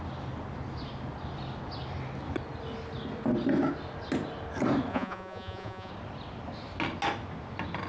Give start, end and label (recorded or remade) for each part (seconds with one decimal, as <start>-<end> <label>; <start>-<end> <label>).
0.0-4.9 recorded; 4.9-5.9 remade; 5.9-7.9 recorded